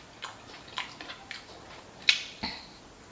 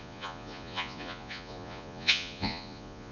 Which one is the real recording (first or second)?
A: first